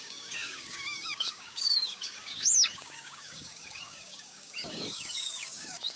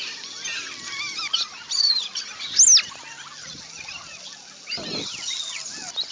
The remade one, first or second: first